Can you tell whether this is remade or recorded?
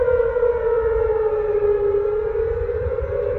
recorded